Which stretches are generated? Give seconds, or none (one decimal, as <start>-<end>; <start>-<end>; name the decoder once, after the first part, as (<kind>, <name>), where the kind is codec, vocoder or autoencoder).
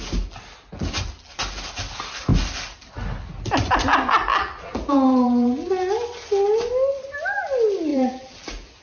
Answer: 4.3-5.7 (vocoder, BigVGAN v2); 7.9-8.8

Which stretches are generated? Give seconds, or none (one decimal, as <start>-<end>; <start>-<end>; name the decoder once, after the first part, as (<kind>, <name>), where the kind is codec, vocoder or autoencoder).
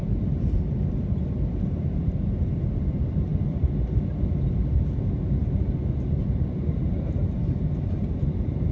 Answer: 0.0-3.3 (vocoder, BigVGAN v2); 5.1-8.7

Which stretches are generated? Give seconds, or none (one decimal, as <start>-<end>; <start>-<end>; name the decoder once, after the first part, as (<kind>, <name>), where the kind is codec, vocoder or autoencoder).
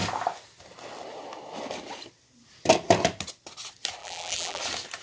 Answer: 4.0-4.6 (vocoder, BigVGAN v2)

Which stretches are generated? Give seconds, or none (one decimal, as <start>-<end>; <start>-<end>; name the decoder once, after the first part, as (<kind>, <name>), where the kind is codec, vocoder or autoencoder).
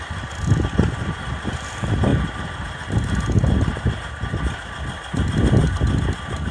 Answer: 2.1-4.0 (vocoder, BigVGAN v2)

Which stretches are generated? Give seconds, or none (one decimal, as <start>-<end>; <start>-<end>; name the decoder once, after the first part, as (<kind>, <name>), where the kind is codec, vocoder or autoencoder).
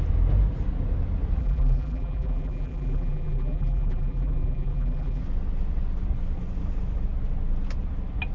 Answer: 1.4-5.2 (vocoder, BigVGAN v2)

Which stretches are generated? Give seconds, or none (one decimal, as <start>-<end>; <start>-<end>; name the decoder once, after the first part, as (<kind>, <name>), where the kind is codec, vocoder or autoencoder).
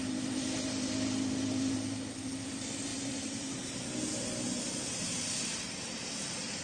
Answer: none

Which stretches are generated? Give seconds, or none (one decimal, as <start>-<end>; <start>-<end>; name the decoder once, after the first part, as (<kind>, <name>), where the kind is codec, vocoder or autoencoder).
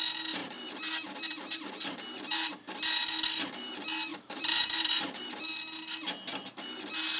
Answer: 0.4-2.5 (vocoder, BigVGAN v2); 4.1-5.5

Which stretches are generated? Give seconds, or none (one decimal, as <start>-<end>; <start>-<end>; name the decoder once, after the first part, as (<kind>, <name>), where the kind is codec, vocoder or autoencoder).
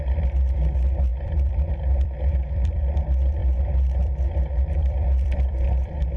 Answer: 0.0-6.2 (vocoder, BigVGAN v2)